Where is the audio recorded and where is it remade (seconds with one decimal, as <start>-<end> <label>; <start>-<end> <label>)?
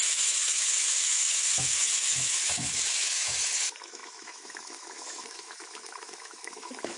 0.0-7.0 remade